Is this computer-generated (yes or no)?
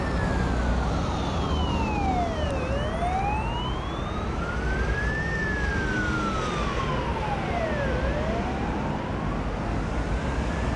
no